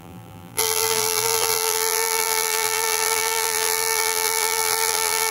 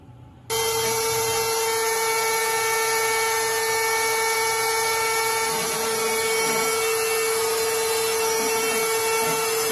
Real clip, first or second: second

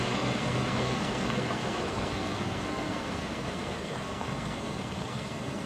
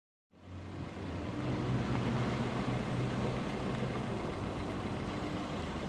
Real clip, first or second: second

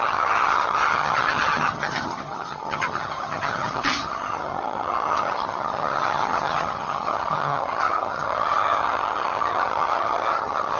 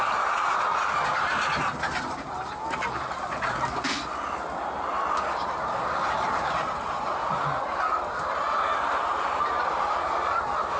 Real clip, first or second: second